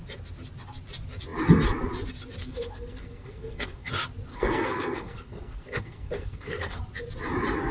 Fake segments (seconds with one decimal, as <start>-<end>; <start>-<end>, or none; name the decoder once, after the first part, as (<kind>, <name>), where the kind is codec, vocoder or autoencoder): 2.4-3.9 (codec, SNAC); 4.3-6.8